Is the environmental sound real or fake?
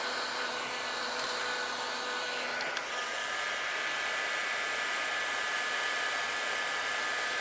real